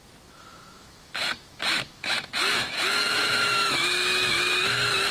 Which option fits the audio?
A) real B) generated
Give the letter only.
B